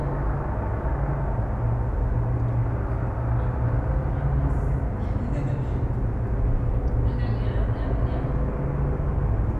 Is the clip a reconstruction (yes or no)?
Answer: no